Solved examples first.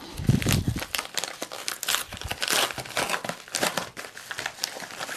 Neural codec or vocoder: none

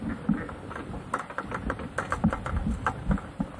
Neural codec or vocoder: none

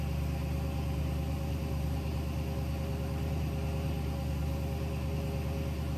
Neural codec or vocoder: none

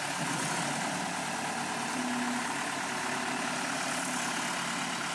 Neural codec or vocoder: none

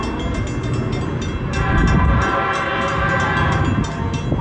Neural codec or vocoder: none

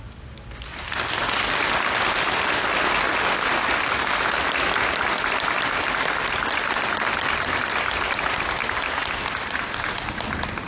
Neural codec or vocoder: none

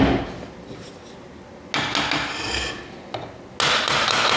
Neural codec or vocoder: none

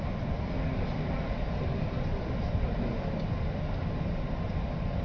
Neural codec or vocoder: none